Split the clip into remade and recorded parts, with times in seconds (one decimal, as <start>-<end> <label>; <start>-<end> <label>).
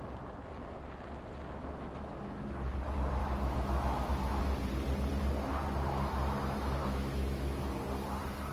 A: 0.0-1.6 recorded; 1.6-2.7 remade; 2.7-3.2 recorded; 3.2-4.4 remade; 4.4-6.8 recorded; 6.8-7.7 remade; 7.7-8.5 recorded